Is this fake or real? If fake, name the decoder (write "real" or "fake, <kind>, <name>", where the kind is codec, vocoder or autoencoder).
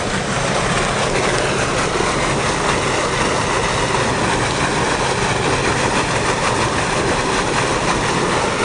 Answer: real